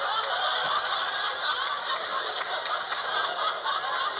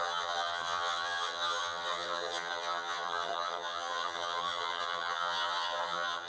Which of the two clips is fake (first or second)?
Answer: second